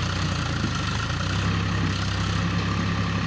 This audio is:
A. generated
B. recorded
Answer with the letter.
B